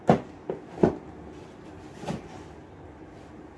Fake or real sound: real